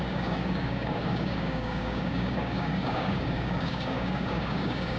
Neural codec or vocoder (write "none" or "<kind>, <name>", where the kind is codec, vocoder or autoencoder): codec, DAC